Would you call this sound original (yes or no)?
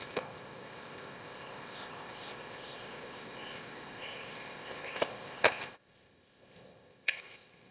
no